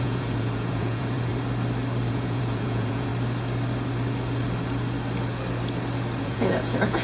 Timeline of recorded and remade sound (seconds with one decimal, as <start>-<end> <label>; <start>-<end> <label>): 0.0-1.3 remade; 1.3-2.1 recorded; 2.1-3.1 remade; 3.1-6.2 recorded; 6.2-7.0 remade